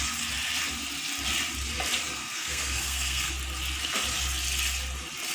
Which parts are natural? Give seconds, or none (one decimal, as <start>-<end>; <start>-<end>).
0.0-2.2; 3.3-5.3